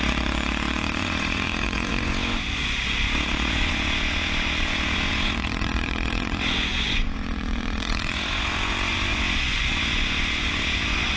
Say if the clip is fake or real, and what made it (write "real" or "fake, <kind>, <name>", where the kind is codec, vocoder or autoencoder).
fake, vocoder, Vocos